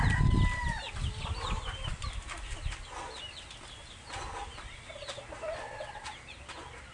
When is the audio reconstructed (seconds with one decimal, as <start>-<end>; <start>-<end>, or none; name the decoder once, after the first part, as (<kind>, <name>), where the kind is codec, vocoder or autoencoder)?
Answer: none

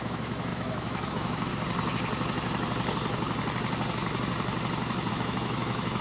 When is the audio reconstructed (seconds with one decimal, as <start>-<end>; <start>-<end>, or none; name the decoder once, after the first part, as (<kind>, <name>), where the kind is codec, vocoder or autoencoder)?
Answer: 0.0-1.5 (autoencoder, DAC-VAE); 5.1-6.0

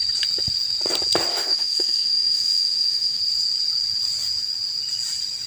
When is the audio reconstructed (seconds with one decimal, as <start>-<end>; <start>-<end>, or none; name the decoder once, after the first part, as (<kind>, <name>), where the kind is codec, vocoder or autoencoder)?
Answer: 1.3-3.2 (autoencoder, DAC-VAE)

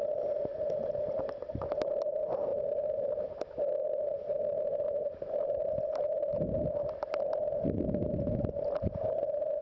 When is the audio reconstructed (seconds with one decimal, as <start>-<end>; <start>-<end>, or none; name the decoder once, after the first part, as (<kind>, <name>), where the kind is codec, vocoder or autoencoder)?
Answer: none

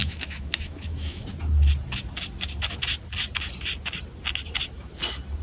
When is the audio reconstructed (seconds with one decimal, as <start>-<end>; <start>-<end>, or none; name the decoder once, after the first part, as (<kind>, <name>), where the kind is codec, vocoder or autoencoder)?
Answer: 0.0-1.2 (autoencoder, DAC-VAE)